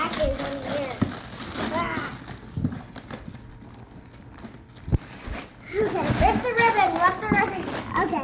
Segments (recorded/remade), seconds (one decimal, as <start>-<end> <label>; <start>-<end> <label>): 0.0-8.2 recorded